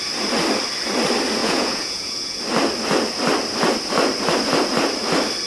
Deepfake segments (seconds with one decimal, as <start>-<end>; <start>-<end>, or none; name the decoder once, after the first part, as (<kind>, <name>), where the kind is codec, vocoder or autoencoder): 1.4-2.4 (vocoder, Vocos)